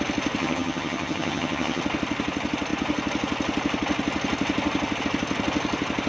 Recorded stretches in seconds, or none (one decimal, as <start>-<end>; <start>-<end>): 0.0-0.4; 1.8-6.1

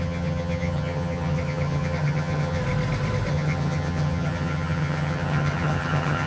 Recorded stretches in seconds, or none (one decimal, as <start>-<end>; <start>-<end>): 2.6-3.3

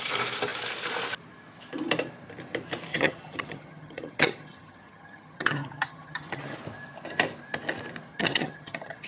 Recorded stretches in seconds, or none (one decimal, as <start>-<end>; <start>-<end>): 0.0-2.9; 6.6-8.1

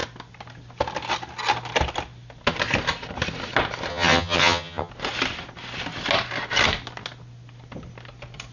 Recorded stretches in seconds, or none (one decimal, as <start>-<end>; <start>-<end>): 0.0-3.9; 4.9-8.5

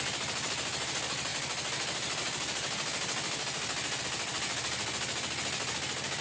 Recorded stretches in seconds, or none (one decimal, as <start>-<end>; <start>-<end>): 0.0-6.2

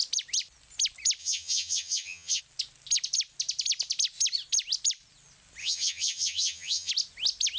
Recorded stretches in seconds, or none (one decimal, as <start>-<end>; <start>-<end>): 0.0-1.2; 2.4-5.6; 6.9-7.6

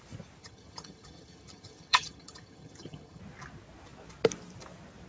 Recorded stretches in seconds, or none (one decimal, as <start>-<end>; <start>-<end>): 0.0-0.4; 3.2-5.1

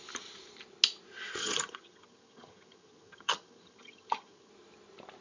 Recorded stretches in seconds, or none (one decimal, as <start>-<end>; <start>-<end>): 0.0-1.4; 4.5-5.2